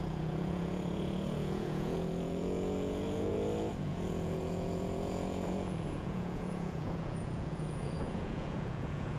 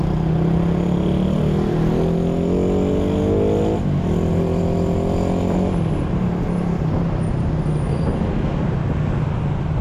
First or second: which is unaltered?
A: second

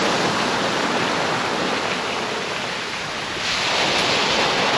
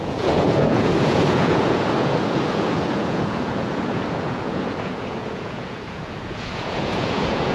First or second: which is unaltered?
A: first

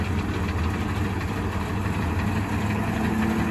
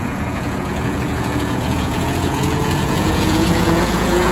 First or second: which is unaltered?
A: first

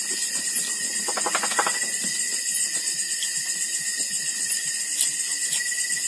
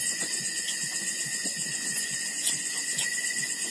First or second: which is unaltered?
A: first